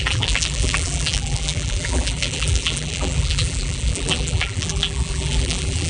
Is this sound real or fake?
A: fake